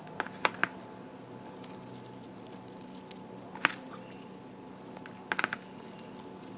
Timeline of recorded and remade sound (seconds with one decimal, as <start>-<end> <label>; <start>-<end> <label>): 0.0-6.6 recorded